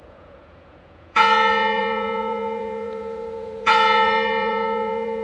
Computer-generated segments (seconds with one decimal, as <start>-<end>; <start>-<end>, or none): 0.0-5.2